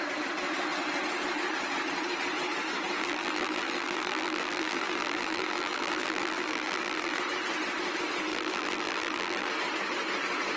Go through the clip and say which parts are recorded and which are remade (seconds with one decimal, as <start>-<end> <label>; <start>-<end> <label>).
0.0-3.0 recorded; 3.0-7.2 remade; 7.2-8.3 recorded; 8.3-9.5 remade; 9.5-10.6 recorded